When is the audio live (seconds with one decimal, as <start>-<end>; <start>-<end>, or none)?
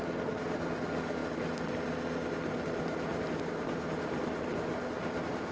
0.0-5.5